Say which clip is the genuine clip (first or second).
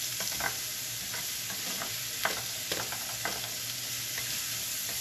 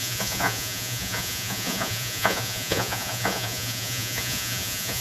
first